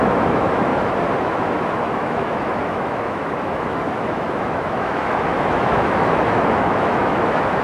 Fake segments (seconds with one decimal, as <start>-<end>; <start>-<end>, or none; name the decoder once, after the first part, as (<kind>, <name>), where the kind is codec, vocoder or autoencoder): 0.0-0.7 (autoencoder, DAC-VAE); 1.2-7.6